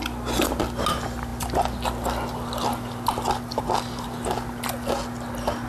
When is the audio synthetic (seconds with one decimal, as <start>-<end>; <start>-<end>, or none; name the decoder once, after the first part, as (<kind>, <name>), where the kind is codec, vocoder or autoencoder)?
none